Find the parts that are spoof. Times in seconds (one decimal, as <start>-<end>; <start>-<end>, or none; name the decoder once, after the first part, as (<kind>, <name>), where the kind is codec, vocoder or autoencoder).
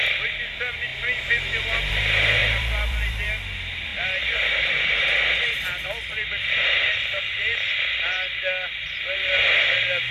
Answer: 2.4-3.3 (vocoder, BigVGAN v2)